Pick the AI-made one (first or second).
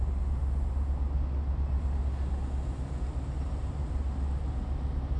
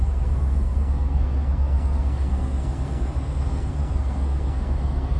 second